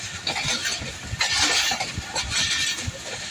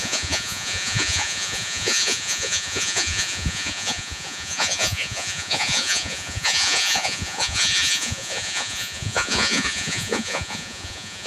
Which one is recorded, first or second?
first